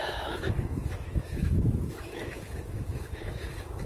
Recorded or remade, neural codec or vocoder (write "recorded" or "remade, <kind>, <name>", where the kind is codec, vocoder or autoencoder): remade, autoencoder, DAC-VAE